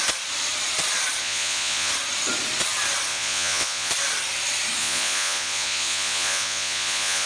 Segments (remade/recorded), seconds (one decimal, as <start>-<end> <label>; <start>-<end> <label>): 0.0-1.2 recorded; 1.2-1.9 remade; 1.9-3.1 recorded; 3.1-3.9 remade; 3.9-4.8 recorded; 4.8-7.3 remade